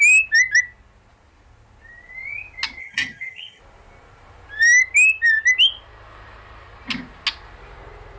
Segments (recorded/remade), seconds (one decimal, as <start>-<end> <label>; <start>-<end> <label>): 0.0-2.8 recorded; 2.8-3.6 remade; 3.6-8.2 recorded